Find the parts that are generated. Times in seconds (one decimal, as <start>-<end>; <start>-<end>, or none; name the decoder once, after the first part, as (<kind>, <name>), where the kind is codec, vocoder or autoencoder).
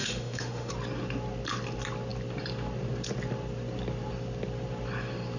0.0-0.7 (autoencoder, DAC-VAE)